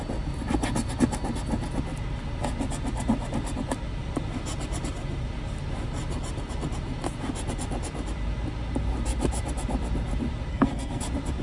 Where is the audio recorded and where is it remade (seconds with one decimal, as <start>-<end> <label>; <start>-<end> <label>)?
0.0-10.5 recorded; 10.5-11.0 remade; 11.0-11.4 recorded